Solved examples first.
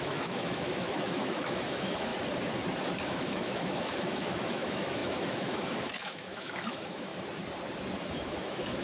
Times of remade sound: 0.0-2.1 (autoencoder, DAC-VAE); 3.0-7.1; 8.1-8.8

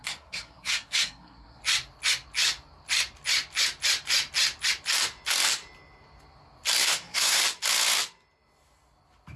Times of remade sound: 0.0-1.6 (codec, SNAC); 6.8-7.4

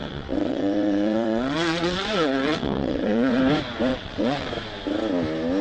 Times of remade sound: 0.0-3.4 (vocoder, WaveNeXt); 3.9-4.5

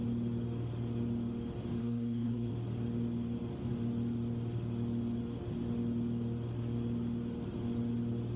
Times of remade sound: 1.8-2.5 (codec, SNAC)

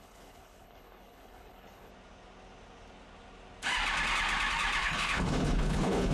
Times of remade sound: 0.0-1.9 (codec, HILCodec); 4.8-6.1

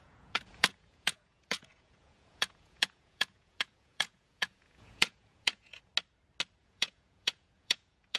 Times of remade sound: 0.0-5.9 (vocoder, Vocos); 6.6-8.2

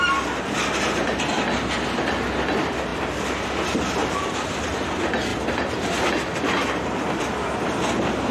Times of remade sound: 2.9-3.6 (vocoder, BigVGAN v2); 4.0-4.6